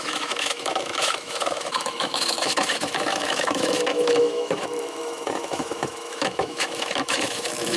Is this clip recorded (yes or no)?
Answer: no